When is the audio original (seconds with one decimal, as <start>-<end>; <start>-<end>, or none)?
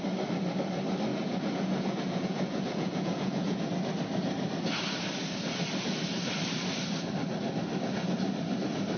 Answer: 0.0-1.1; 3.7-9.0